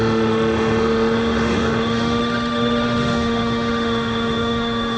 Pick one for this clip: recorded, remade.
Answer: remade